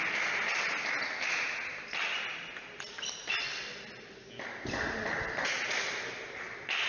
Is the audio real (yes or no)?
yes